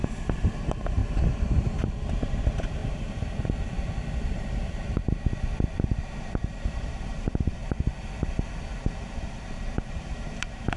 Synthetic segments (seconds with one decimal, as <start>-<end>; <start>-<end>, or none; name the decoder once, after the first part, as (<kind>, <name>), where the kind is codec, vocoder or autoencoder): 0.0-1.0 (vocoder, BigVGAN v2); 2.0-2.8; 5.8-7.6; 8.8-10.8